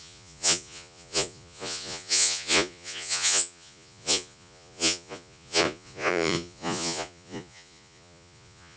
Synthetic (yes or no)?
yes